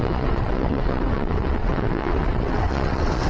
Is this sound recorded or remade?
remade